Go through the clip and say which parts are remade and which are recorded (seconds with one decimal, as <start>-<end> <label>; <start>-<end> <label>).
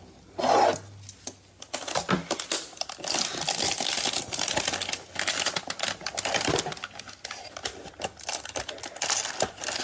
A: 0.0-9.8 recorded